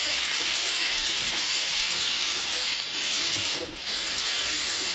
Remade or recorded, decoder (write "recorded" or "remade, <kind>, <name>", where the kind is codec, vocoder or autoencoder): remade, codec, DAC